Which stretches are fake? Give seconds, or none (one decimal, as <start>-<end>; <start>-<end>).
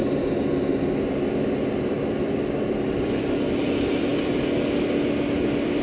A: none